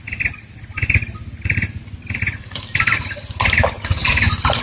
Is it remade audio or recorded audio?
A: recorded